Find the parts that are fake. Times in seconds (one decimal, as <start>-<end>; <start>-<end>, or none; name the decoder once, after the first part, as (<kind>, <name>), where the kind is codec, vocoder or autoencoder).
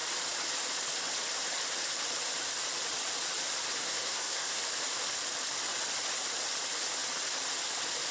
3.8-4.6 (codec, SNAC)